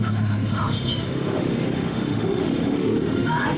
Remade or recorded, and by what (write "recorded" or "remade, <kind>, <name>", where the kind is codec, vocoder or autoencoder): remade, autoencoder, DAC-VAE